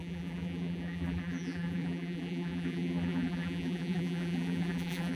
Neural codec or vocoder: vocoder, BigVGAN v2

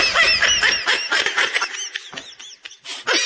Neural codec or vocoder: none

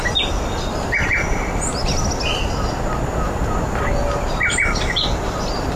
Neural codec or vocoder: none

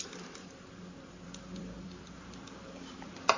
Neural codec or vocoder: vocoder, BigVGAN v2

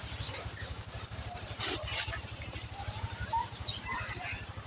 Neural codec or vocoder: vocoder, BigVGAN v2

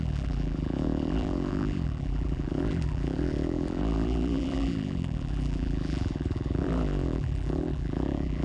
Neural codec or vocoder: vocoder, BigVGAN v2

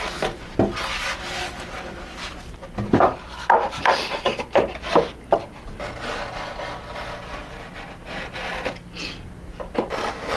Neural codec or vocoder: none